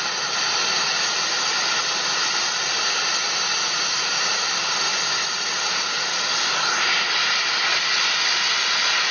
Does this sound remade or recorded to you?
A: recorded